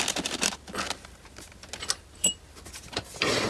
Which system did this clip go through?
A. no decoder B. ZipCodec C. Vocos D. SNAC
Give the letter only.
A